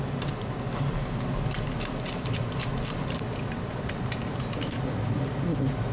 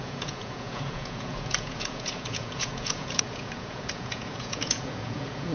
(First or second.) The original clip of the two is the first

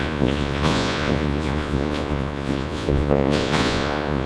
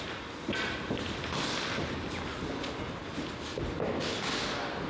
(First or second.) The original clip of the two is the second